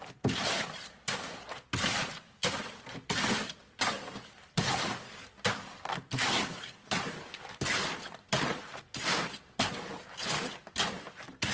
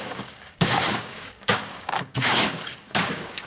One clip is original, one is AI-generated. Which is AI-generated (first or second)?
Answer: second